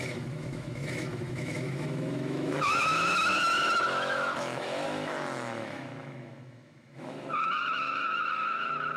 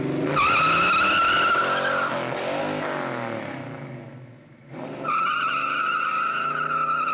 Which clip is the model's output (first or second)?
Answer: first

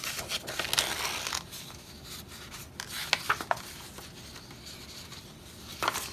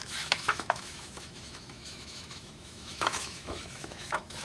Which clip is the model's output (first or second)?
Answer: second